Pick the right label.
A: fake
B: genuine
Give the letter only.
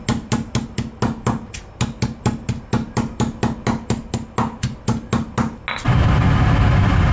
B